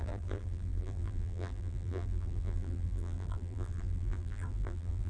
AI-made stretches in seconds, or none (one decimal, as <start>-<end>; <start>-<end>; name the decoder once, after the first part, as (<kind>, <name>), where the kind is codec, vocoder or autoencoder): 0.0-5.1 (vocoder, BigVGAN v2)